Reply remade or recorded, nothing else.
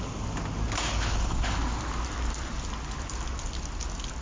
recorded